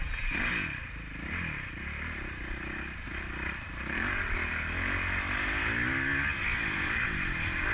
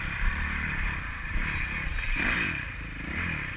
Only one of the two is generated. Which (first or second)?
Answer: second